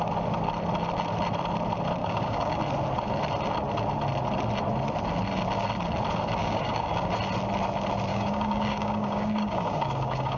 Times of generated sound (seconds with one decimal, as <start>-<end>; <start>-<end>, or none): 2.0-2.6; 6.4-7.0; 8.1-10.4